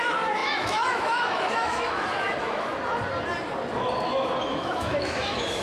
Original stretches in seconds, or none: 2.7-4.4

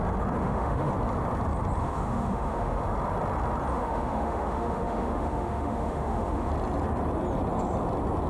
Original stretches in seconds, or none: 0.0-0.4; 0.9-1.8; 2.8-3.7; 6.5-8.3

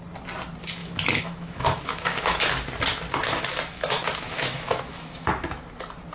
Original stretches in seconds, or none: 0.0-0.8; 2.5-3.5; 5.3-6.1

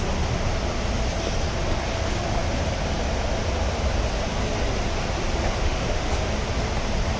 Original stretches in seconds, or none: 0.0-5.6; 6.3-7.2

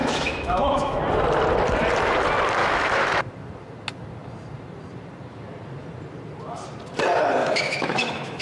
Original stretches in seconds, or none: 1.0-2.6; 3.2-7.4